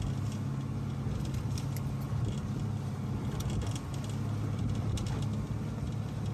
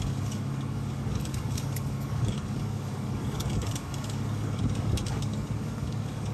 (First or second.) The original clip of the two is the first